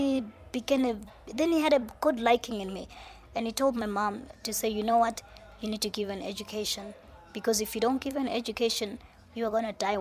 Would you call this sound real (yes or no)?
no